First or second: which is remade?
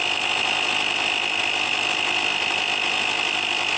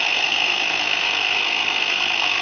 second